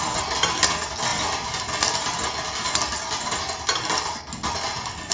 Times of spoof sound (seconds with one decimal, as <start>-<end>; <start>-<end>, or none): none